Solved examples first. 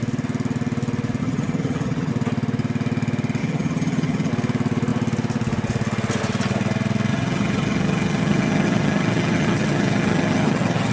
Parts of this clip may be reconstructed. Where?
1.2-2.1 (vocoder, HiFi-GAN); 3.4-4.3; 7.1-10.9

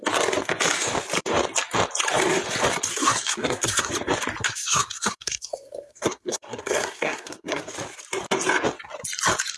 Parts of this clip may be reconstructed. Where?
2.9-3.9 (codec, SNAC); 4.4-7.6